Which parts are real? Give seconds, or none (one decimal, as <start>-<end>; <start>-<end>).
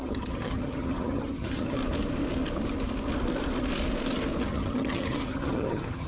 1.8-4.4